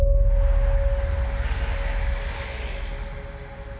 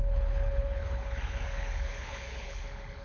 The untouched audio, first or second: first